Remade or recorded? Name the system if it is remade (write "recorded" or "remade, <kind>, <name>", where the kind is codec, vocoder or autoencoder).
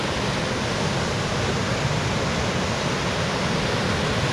recorded